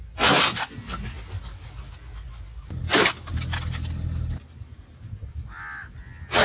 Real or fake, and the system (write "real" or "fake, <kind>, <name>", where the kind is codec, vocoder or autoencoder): real